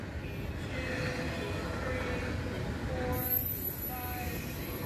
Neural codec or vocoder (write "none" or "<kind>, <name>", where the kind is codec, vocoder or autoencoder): none